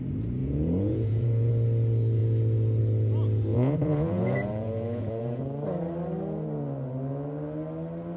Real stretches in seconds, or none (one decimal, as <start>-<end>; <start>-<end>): 0.0-0.4; 1.5-3.5; 5.4-8.2